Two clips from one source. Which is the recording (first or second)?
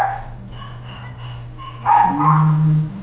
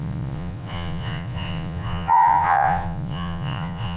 first